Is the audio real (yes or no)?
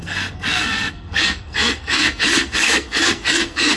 no